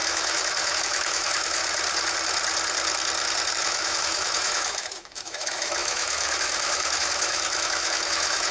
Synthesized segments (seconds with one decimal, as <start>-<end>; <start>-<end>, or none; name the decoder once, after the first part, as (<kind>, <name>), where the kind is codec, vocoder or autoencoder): 0.0-1.6 (autoencoder, DAC-VAE); 3.5-8.5